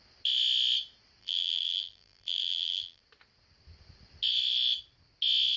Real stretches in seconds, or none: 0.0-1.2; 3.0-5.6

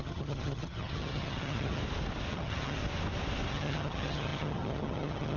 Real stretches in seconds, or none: 1.8-2.3; 2.8-3.5

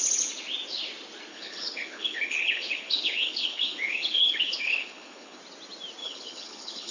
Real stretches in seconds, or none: 0.0-1.3; 5.4-6.0

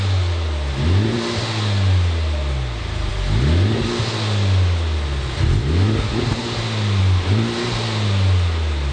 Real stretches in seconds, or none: 0.0-8.9

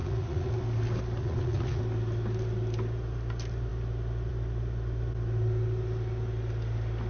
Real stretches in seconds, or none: 0.5-1.2; 1.8-7.1

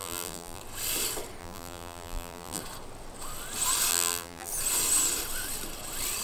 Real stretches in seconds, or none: 0.6-1.4; 2.6-3.9; 4.5-6.2

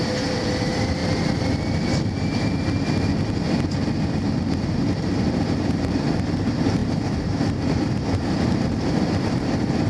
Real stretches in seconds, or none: 1.0-4.5

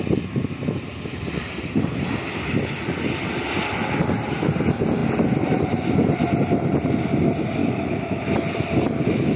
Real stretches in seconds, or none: 0.0-7.6; 8.2-9.4